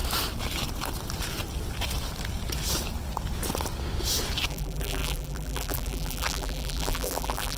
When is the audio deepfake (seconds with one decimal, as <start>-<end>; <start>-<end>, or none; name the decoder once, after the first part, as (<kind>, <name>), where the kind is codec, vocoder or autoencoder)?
4.5-7.6 (vocoder, BigVGAN v2)